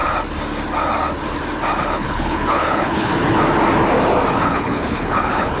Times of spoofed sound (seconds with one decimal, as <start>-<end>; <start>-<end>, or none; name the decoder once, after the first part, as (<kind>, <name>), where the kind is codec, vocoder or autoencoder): 1.8-3.1 (codec, HILCodec); 4.3-5.6